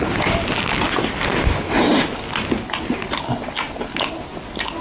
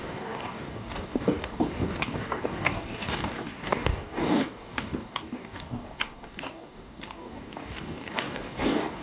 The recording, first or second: first